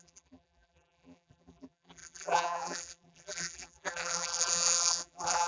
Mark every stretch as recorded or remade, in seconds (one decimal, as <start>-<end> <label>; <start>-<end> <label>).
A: 0.0-5.5 remade